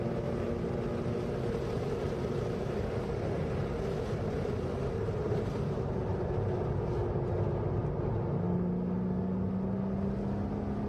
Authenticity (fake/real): real